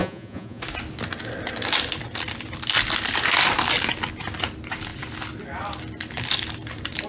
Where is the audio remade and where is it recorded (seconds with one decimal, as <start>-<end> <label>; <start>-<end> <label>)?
0.0-0.6 remade; 0.6-7.1 recorded